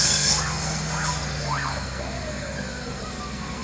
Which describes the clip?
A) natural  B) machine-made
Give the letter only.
B